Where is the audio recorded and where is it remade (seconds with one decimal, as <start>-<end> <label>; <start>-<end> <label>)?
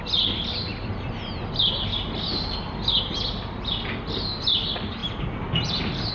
0.0-6.1 recorded